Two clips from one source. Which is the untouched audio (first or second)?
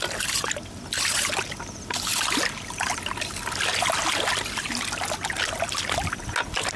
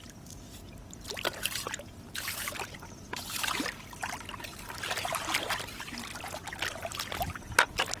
first